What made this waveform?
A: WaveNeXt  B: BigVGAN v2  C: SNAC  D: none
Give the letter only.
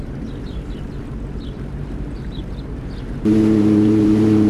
B